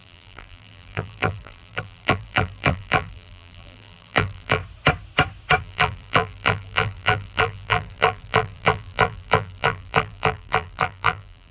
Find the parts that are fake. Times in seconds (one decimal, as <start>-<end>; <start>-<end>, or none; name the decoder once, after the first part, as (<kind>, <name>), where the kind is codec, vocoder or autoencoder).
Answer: 0.0-4.6 (vocoder, BigVGAN v2); 5.6-11.5